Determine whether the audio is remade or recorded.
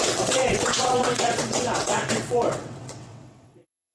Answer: remade